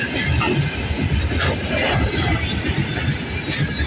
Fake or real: real